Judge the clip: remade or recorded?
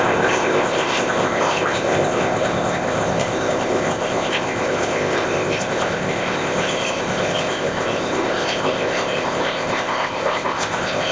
remade